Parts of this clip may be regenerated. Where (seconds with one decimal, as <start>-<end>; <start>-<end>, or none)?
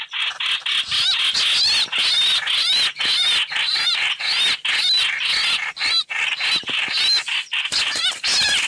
none